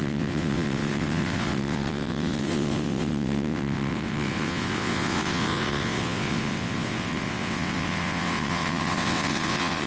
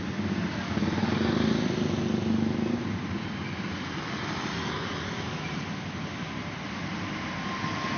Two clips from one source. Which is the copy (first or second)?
first